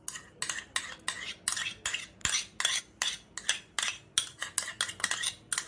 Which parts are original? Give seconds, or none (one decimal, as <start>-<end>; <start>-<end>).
0.0-5.7